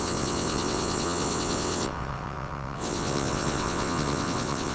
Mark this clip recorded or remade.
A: remade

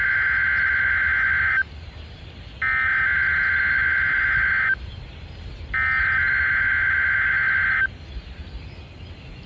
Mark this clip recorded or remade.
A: recorded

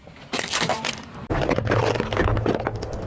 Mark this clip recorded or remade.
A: recorded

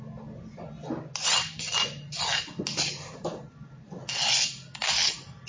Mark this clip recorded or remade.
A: recorded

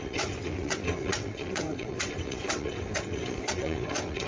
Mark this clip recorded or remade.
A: remade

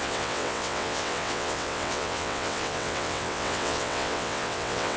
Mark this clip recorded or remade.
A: remade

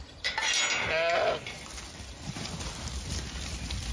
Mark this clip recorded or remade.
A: recorded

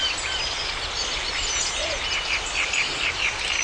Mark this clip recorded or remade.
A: recorded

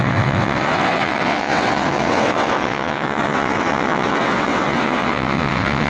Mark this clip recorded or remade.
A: remade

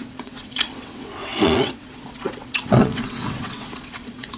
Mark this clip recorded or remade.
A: remade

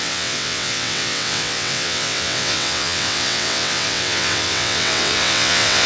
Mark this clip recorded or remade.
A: remade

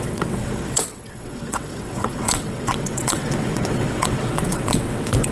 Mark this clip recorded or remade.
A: remade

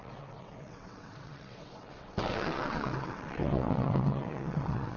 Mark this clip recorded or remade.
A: remade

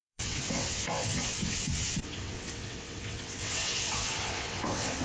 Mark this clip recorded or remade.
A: remade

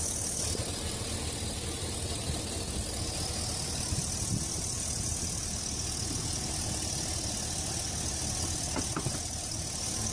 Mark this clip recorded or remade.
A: recorded